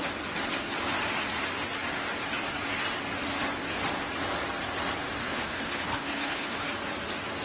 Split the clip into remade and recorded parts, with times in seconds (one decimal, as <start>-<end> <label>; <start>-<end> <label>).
0.0-5.2 recorded; 5.2-6.7 remade; 6.7-7.4 recorded

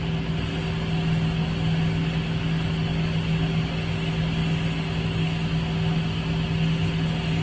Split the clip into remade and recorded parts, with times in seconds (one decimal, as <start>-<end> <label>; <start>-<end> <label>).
0.0-7.4 recorded

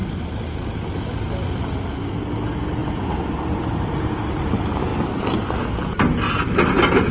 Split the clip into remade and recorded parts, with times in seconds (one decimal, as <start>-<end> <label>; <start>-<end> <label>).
0.0-2.8 recorded; 2.8-4.5 remade; 4.5-7.1 recorded

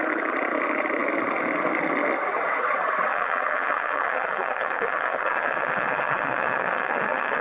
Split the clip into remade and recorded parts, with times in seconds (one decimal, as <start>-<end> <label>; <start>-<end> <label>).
0.0-3.1 recorded; 3.1-7.4 remade

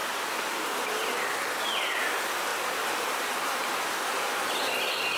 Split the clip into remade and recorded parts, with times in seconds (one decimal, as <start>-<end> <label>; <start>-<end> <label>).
0.0-0.8 remade; 0.8-2.5 recorded; 2.5-4.4 remade; 4.4-5.2 recorded

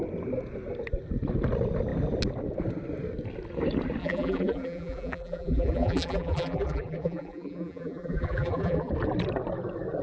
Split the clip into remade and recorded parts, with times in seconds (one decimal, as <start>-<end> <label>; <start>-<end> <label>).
0.0-4.0 recorded; 4.0-8.9 remade; 8.9-10.0 recorded

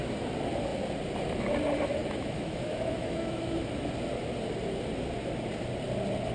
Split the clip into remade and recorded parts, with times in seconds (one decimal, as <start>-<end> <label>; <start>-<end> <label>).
0.0-2.0 recorded; 2.0-3.7 remade; 3.7-6.3 recorded

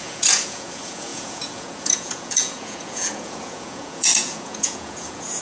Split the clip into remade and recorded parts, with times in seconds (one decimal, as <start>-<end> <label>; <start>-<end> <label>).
0.0-5.4 remade